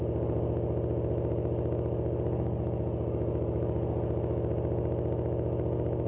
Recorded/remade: recorded